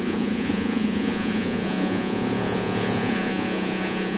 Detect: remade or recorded remade